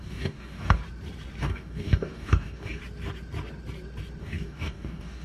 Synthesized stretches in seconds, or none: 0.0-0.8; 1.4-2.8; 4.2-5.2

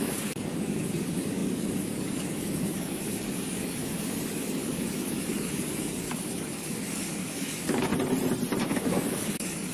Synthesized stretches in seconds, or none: 0.0-7.9; 8.6-9.7

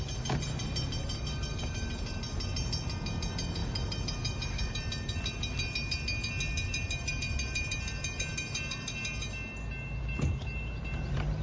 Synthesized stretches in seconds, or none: none

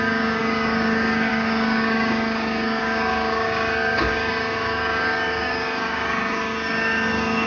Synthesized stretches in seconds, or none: 0.0-7.5

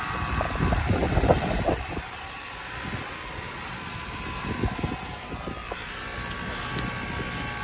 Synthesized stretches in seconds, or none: none

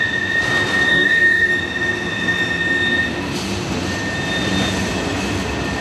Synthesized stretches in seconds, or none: 0.9-1.5